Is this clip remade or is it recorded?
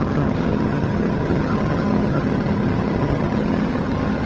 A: remade